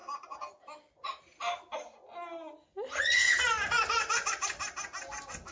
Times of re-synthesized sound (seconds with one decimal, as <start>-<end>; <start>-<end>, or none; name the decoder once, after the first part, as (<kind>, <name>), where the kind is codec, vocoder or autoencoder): 2.9-3.3 (vocoder, HiFi-GAN)